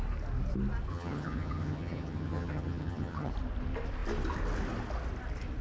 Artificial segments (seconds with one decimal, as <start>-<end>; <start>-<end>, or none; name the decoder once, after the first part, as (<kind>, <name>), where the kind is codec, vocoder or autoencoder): 0.9-3.3 (vocoder, HiFi-GAN)

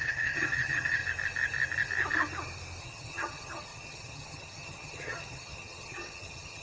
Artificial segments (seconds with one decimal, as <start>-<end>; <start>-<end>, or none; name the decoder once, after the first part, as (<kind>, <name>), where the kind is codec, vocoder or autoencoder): 0.0-1.0 (vocoder, HiFi-GAN); 2.8-6.6